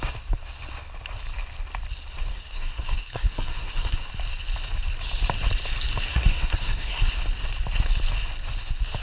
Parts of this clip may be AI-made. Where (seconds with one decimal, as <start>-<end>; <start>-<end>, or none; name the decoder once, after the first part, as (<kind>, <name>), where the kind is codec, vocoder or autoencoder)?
2.3-4.1 (codec, SNAC); 6.1-7.2